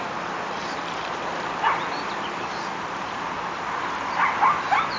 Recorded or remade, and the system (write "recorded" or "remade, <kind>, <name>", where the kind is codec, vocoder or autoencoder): recorded